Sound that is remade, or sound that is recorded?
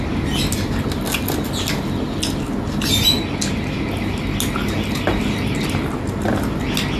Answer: recorded